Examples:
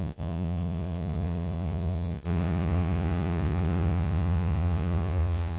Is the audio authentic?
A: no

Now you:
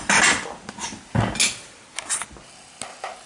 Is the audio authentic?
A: yes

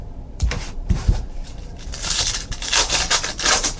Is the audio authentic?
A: no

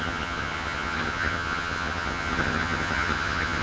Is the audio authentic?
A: no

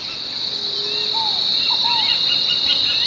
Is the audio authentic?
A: yes